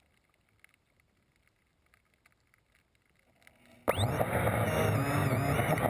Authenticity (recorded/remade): recorded